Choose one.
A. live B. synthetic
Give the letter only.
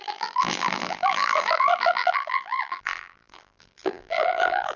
B